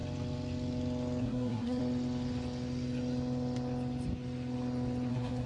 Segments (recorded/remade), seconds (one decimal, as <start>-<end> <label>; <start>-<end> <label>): 0.0-1.2 recorded; 1.2-1.8 remade; 1.8-5.1 recorded; 5.1-5.5 remade